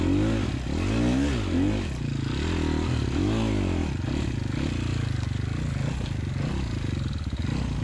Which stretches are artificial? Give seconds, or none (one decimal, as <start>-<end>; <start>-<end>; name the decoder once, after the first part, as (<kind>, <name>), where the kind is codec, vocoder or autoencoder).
none